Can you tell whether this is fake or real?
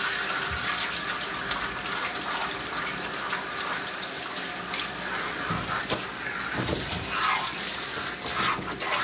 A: real